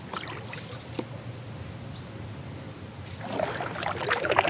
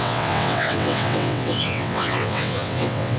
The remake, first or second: second